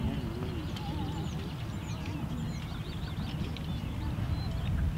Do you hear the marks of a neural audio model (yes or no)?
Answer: no